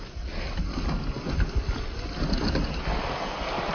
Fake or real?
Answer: real